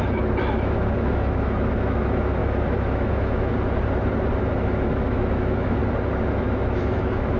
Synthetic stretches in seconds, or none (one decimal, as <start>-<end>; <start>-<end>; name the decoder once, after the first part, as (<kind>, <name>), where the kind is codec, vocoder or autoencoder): 0.0-3.5 (autoencoder, DAC-VAE); 4.5-5.8; 6.4-7.4